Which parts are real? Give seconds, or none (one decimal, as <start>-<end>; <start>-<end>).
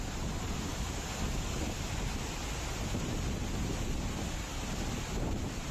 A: 0.0-5.7